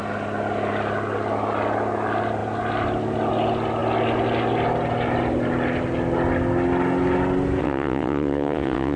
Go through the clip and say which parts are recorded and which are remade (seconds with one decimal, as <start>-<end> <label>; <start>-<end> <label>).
0.0-7.6 recorded; 7.6-9.0 remade